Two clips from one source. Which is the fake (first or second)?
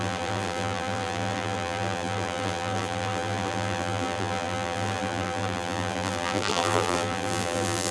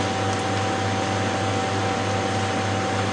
first